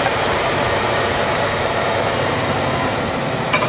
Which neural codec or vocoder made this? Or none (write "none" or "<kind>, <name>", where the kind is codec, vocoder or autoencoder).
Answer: vocoder, BigVGAN v2